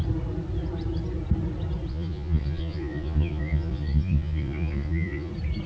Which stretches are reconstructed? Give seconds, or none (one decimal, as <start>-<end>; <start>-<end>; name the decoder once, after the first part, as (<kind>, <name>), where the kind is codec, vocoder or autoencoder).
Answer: 1.9-5.3 (vocoder, Vocos)